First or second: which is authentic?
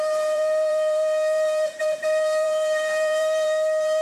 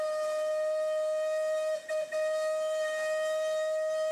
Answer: second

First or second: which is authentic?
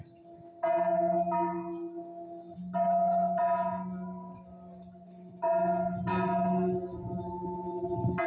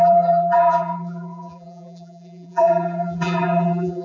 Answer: first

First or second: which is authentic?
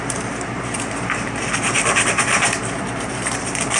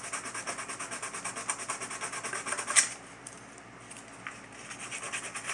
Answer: second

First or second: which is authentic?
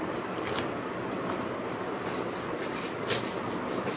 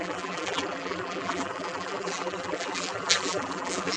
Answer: first